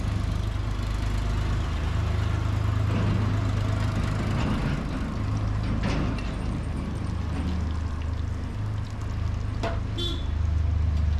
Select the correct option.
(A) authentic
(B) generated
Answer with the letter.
A